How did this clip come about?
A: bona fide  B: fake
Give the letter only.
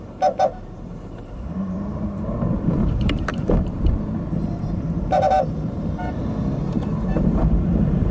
B